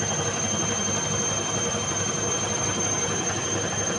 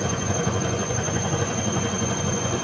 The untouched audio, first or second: first